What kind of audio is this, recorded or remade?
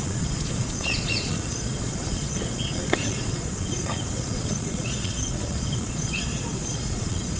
remade